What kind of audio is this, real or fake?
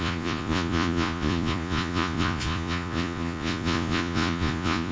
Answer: fake